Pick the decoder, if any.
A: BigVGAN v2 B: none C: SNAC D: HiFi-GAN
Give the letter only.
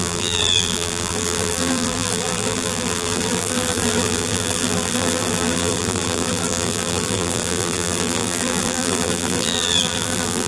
A